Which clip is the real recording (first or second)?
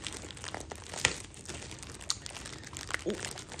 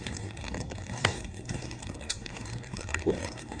first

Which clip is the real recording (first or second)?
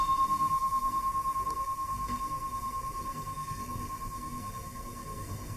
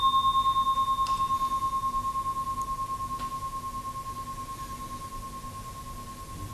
second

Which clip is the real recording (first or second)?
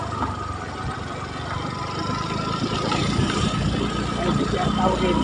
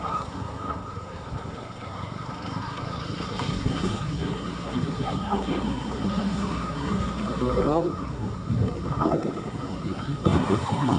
first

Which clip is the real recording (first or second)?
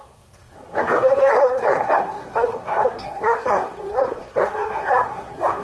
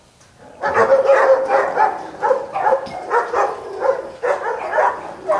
second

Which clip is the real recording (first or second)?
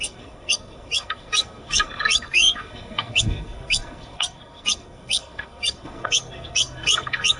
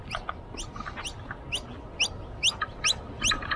second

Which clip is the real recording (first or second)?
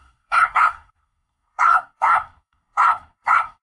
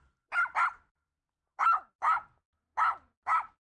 second